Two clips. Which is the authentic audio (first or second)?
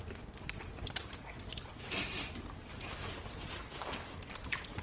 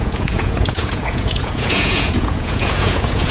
first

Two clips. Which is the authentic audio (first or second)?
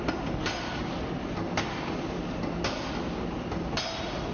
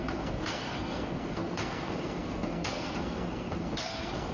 first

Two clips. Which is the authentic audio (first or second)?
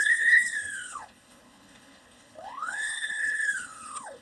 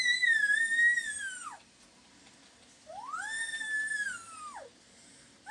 second